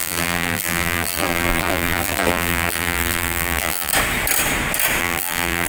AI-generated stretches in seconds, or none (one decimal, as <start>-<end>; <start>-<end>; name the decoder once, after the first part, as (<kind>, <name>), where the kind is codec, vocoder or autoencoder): 0.0-3.9 (vocoder, BigVGAN v2); 5.0-5.7